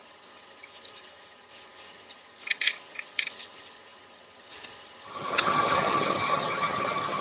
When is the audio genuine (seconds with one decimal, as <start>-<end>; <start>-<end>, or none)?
none